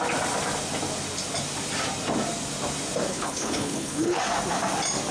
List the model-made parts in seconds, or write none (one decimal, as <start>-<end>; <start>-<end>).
3.1-4.2